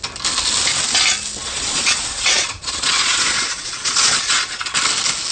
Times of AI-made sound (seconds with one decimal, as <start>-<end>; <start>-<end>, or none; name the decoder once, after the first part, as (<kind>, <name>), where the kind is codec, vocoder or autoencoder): 1.4-4.6 (vocoder, Vocos)